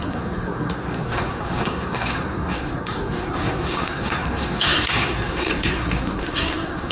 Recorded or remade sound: remade